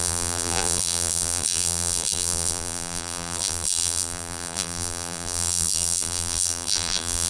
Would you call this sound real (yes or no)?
no